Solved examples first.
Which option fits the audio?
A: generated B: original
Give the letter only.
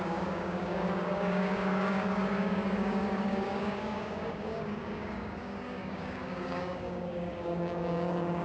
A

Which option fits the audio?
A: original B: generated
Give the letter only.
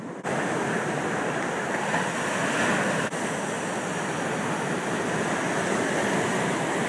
A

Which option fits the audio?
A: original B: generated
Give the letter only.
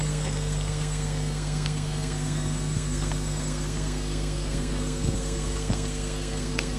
B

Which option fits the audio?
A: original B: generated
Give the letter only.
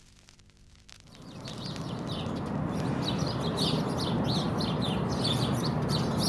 A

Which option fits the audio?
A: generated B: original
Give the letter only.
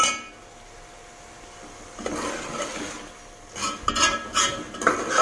B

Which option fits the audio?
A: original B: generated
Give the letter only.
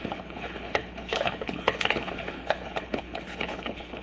B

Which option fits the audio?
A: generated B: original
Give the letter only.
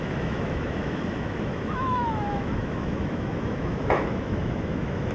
A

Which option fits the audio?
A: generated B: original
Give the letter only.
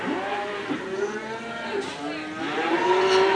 A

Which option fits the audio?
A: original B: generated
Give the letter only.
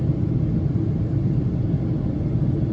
A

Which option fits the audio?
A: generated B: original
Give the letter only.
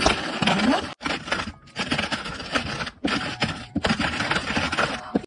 A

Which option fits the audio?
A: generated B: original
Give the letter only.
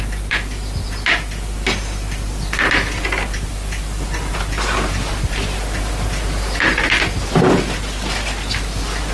B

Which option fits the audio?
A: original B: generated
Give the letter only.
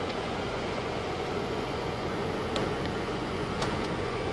B